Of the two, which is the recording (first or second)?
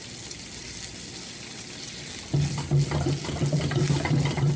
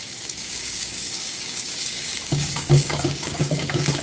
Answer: first